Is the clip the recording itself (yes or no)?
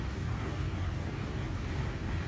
no